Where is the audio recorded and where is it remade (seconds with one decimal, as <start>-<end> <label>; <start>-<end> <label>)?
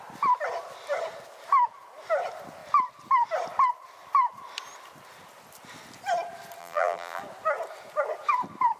0.0-6.6 recorded; 6.6-7.2 remade; 7.2-8.8 recorded